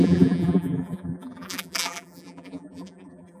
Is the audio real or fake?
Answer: fake